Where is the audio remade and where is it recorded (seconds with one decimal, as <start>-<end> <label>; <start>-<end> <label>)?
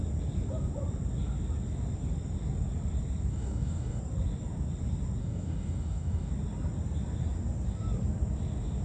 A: 0.0-3.3 recorded; 3.3-4.0 remade; 4.0-5.2 recorded; 5.2-6.3 remade; 6.3-8.8 recorded